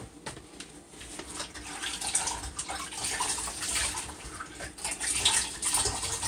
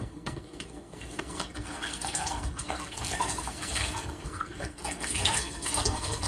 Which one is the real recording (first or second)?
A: first